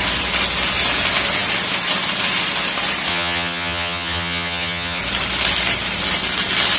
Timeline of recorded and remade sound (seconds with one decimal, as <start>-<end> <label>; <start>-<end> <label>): 0.0-3.1 recorded; 3.1-5.0 remade; 5.0-6.8 recorded

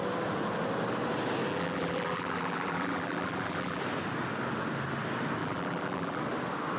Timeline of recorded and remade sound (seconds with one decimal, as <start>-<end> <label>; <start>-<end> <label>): 0.0-1.5 recorded; 1.5-3.8 remade; 3.8-5.4 recorded; 5.4-6.2 remade; 6.2-6.8 recorded

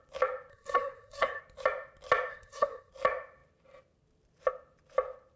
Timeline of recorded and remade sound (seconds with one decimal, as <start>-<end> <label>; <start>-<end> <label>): 0.0-0.5 recorded; 0.5-1.4 remade; 1.4-2.3 recorded; 2.3-2.9 remade; 2.9-5.4 recorded

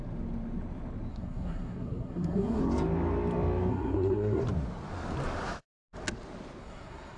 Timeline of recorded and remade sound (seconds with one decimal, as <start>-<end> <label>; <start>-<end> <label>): 0.0-1.1 recorded; 1.1-2.6 remade; 2.6-3.7 recorded; 3.7-4.4 remade; 4.4-6.6 recorded; 6.6-7.2 remade

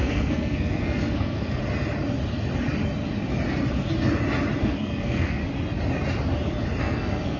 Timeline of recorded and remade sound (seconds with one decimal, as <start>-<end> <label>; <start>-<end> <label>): 0.0-1.6 remade; 1.6-4.6 recorded; 4.6-5.4 remade; 5.4-6.8 recorded; 6.8-7.4 remade

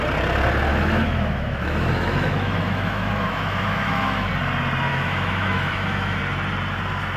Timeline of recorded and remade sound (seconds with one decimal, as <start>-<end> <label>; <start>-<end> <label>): 0.0-0.7 recorded; 0.7-4.3 remade; 4.3-4.9 recorded; 4.9-6.2 remade; 6.2-7.2 recorded